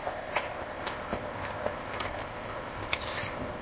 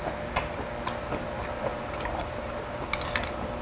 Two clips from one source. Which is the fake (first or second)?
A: first